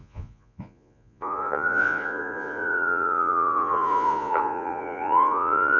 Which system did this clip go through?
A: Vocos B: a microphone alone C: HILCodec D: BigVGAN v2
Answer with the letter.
A